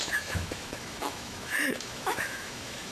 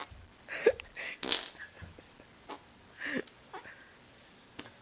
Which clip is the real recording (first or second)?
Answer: second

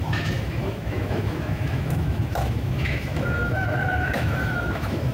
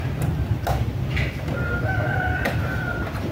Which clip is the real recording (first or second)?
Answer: second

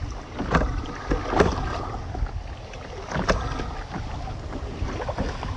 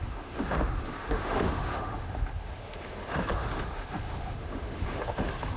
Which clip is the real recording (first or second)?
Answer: first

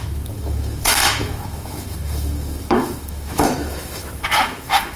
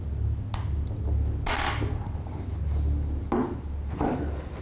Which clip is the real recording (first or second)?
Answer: second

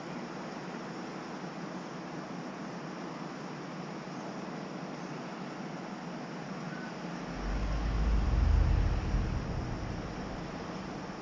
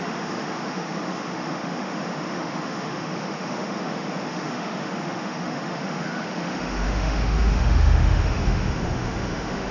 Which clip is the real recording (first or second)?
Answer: first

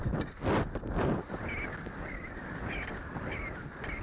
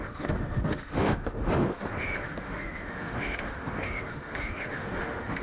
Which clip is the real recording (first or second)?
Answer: first